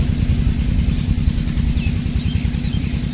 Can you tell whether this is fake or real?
fake